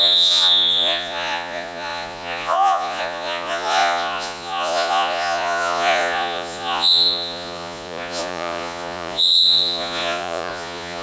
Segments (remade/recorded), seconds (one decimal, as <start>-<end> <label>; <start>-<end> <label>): 0.0-11.0 remade